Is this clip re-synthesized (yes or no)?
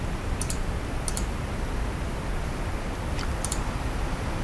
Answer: yes